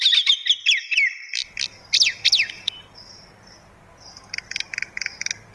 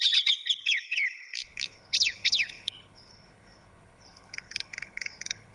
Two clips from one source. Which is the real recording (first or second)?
first